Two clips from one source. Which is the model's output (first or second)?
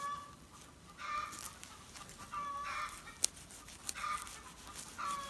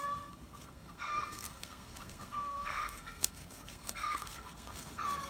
second